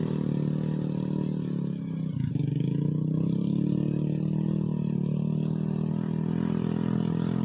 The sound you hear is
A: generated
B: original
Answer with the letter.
B